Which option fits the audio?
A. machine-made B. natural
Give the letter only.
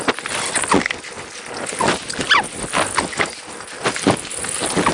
B